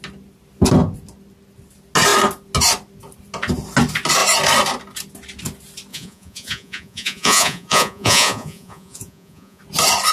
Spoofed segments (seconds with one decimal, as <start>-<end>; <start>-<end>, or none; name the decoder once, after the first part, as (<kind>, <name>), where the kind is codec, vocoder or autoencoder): 5.9-9.6 (vocoder, Vocos)